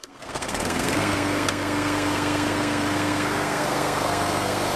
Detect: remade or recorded remade